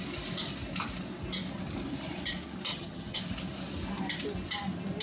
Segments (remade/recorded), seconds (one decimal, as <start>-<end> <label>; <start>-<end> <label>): 0.0-2.7 recorded; 2.7-3.2 remade; 3.2-5.0 recorded